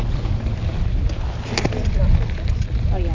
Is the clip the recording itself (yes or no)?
yes